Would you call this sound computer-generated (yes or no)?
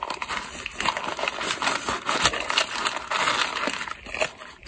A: no